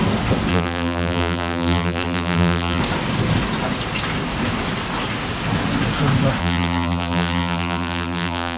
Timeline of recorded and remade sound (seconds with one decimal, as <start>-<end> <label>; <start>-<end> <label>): 0.0-0.5 recorded; 0.5-2.8 remade; 2.8-6.4 recorded; 6.4-8.6 remade

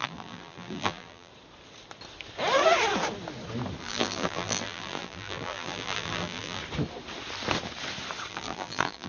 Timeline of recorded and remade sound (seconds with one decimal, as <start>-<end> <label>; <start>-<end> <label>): 0.0-1.3 remade; 1.3-3.8 recorded; 3.8-6.6 remade; 6.6-8.3 recorded; 8.3-9.1 remade

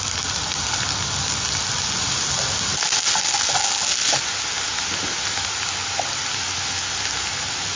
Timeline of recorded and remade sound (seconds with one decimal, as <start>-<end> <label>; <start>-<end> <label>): 0.0-7.8 recorded

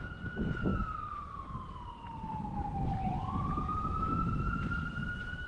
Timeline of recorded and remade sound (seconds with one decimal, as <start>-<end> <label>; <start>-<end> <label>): 0.0-5.5 remade